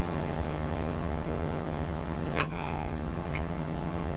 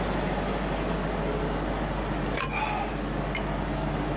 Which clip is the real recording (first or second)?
second